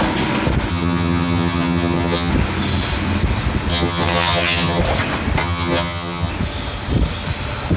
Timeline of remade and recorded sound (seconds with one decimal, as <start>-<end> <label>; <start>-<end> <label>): 0.0-0.7 recorded; 0.7-2.3 remade; 2.3-3.7 recorded; 3.7-4.8 remade; 4.8-5.4 recorded; 5.4-6.3 remade; 6.3-7.8 recorded

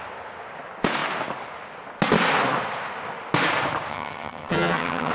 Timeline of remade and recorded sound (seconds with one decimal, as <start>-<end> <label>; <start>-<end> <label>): 0.0-3.9 recorded; 3.9-5.1 remade

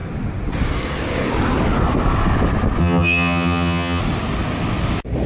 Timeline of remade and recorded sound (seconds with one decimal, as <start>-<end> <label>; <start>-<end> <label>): 0.0-2.8 recorded; 2.8-4.0 remade; 4.0-5.3 recorded

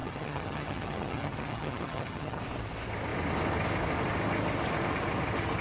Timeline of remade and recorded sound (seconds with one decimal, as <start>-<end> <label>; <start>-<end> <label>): 0.0-2.4 remade; 2.4-5.6 recorded

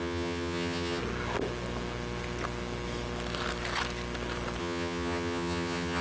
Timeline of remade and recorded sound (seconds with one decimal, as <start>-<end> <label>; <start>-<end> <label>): 0.0-1.0 remade; 1.0-4.6 recorded; 4.6-6.0 remade